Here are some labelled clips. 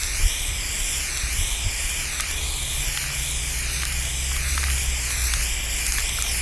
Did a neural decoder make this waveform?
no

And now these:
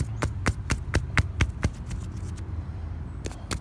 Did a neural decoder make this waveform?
no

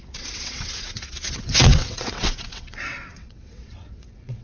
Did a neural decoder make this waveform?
yes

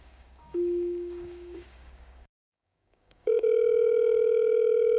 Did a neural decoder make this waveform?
yes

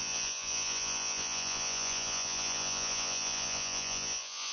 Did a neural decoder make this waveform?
yes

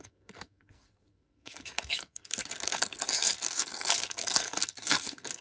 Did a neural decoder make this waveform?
yes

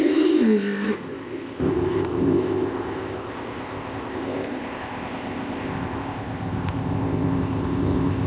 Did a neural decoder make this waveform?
yes